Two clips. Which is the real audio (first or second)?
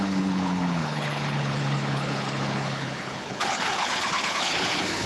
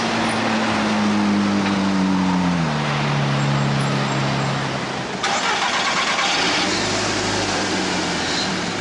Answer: second